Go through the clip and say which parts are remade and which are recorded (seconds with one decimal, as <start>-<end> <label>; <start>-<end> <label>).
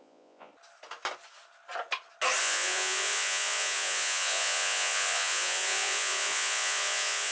0.0-0.5 remade; 0.5-2.4 recorded; 2.4-7.3 remade